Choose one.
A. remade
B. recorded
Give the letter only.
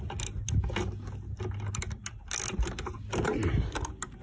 B